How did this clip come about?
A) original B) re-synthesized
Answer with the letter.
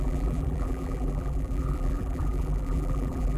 B